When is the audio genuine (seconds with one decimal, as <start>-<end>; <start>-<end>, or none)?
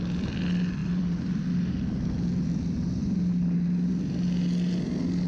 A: 0.0-0.8; 1.4-5.3